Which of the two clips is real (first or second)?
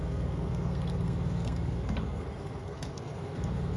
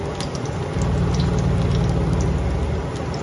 second